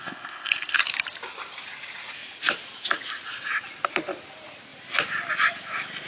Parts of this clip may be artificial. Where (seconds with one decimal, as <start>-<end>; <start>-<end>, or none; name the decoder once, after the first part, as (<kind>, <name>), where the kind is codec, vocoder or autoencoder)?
0.0-0.8 (codec, ZipCodec)